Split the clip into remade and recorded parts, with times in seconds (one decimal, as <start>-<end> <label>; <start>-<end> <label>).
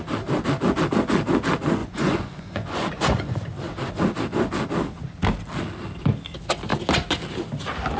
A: 0.0-1.8 recorded; 1.8-3.4 remade; 3.4-8.0 recorded